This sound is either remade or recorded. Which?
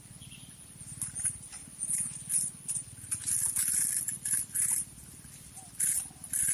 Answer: recorded